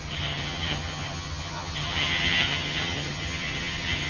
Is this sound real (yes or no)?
no